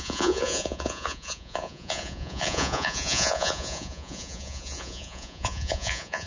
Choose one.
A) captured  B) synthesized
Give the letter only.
B